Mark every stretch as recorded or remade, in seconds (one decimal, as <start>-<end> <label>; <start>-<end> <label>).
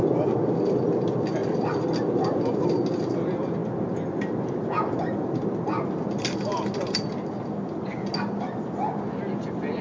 0.0-9.8 recorded